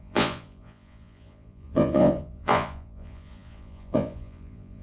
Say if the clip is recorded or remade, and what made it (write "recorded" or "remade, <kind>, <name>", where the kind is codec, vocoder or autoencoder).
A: remade, vocoder, Vocos